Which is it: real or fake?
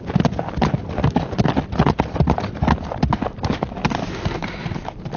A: real